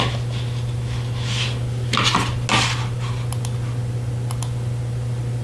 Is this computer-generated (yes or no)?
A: no